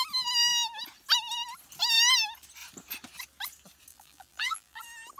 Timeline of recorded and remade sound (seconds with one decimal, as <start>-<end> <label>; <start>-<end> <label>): 0.0-3.9 recorded; 3.9-4.8 remade; 4.8-5.2 recorded